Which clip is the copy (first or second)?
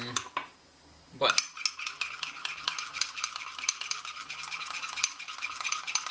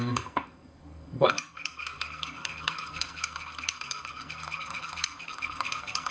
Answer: second